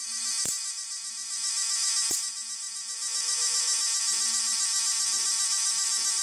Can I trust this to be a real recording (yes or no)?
no